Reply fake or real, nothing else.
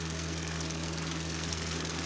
fake